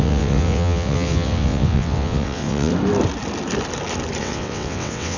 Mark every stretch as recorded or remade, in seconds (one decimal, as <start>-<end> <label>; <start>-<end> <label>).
0.0-2.7 remade; 2.7-4.2 recorded; 4.2-5.2 remade